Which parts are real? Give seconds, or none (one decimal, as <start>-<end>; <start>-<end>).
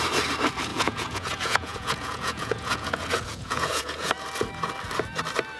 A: 0.0-0.7; 4.1-5.6